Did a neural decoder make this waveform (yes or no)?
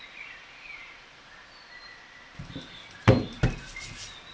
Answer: yes